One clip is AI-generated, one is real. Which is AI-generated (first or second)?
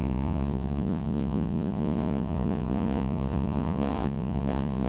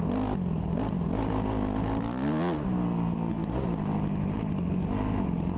first